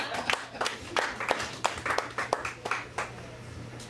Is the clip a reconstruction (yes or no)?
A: no